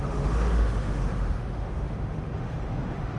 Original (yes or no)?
no